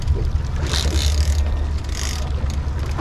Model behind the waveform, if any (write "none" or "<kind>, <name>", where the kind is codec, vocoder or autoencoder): none